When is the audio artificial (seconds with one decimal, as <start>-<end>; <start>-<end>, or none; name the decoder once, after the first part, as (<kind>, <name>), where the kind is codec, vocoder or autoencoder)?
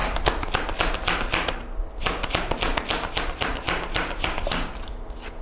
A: none